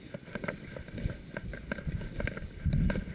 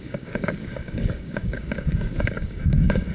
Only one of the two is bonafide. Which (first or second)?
first